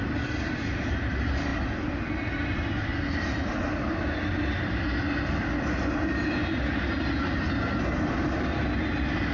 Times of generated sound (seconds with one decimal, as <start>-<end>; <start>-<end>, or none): none